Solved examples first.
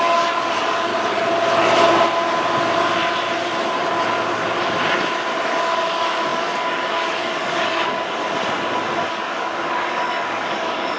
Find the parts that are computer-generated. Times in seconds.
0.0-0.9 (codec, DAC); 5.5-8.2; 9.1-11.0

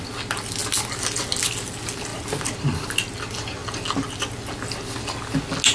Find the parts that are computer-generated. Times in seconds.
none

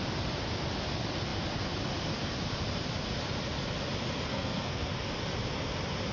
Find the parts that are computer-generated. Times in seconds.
4.3-4.9 (codec, SNAC)

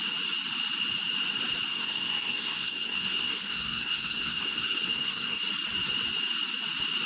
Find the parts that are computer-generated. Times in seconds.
1.7-5.4 (codec, SNAC)

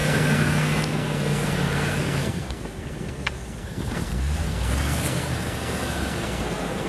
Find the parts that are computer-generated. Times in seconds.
0.0-6.9 (codec, SNAC)

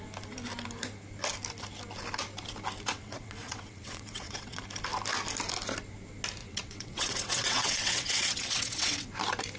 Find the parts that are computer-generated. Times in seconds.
2.9-4.6 (vocoder, WaveNeXt); 6.4-9.1

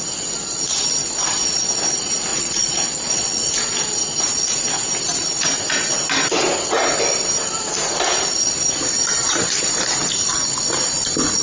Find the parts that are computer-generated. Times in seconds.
2.3-3.5 (vocoder, Vocos)